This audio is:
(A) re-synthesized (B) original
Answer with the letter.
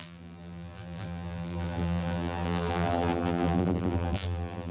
A